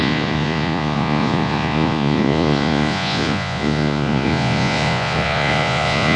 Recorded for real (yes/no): no